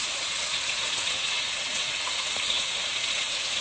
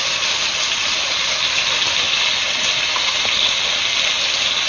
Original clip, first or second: second